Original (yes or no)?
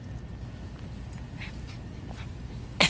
yes